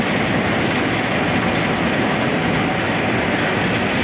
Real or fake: real